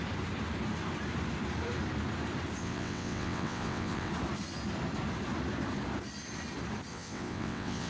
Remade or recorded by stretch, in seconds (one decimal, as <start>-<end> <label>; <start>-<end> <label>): 0.0-2.6 recorded; 2.6-4.1 remade; 4.1-6.9 recorded; 6.9-7.9 remade